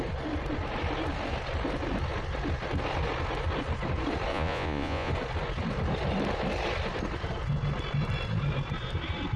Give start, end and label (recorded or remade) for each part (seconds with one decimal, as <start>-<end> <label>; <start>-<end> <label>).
0.0-4.3 recorded; 4.3-5.1 remade; 5.1-9.4 recorded